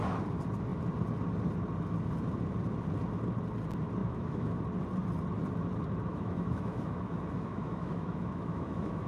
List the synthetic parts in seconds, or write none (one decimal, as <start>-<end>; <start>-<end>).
4.0-4.6; 6.1-9.1